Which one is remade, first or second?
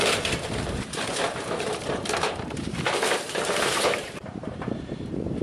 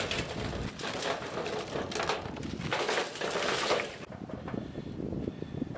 first